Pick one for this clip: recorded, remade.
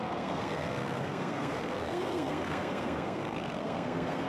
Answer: remade